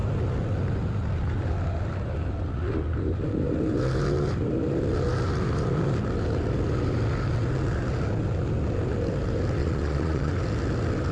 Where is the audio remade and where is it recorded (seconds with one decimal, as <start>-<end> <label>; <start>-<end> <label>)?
0.0-9.6 recorded; 9.6-10.3 remade; 10.3-11.1 recorded